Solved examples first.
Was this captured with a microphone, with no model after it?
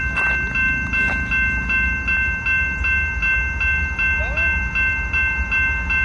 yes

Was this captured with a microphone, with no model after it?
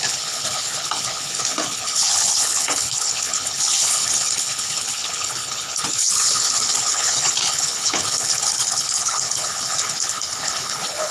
no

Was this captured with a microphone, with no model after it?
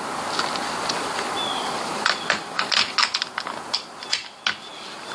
yes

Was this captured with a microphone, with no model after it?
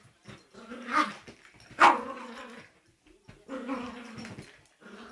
yes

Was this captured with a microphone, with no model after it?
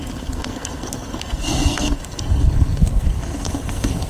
no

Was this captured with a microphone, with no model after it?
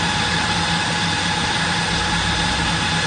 yes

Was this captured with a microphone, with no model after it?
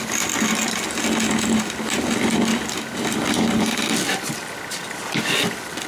yes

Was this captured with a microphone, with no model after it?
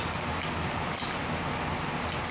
yes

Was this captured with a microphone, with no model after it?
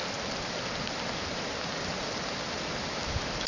yes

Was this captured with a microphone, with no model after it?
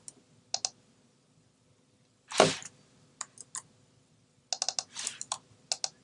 yes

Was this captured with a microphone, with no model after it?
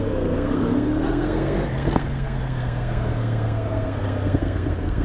no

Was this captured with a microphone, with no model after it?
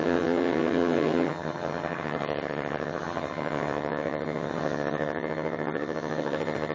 no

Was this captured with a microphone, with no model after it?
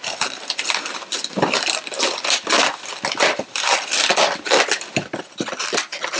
no